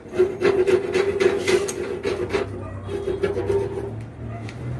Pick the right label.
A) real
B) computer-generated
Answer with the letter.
A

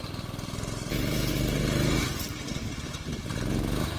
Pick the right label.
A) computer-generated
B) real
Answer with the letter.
B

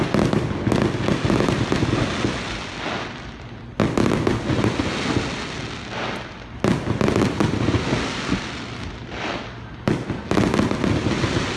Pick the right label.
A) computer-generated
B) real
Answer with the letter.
B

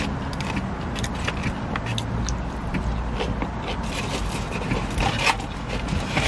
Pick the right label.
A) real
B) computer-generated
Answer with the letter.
A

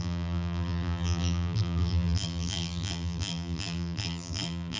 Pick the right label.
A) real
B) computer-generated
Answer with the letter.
B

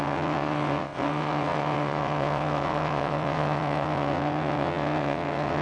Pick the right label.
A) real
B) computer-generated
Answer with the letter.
B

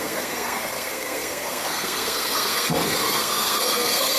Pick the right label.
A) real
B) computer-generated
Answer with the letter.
B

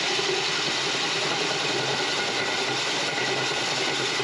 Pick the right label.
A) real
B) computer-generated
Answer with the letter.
A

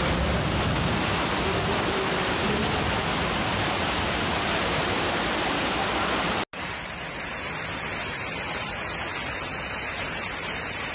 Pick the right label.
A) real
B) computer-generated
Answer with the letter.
A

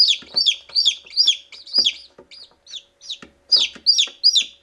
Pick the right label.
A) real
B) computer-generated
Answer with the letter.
A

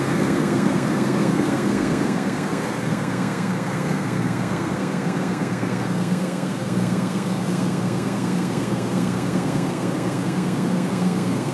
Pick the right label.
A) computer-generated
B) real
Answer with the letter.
A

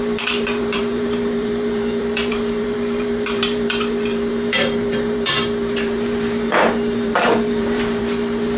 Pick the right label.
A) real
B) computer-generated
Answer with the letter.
B